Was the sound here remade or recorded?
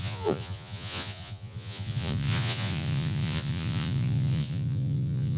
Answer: remade